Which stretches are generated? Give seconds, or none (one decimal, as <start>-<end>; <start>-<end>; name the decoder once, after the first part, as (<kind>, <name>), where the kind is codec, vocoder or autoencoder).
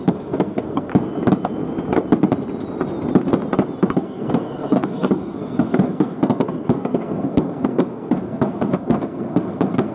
0.0-0.9 (codec, SNAC); 3.8-9.9